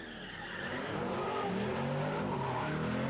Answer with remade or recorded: recorded